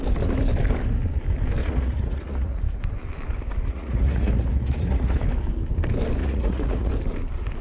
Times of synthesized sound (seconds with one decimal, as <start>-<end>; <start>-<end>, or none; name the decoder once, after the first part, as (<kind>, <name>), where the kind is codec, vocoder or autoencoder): 1.6-2.6 (vocoder, Vocos); 3.7-5.2; 6.2-6.9